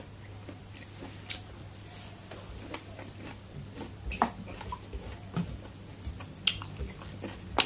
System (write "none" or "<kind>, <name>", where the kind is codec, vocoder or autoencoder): none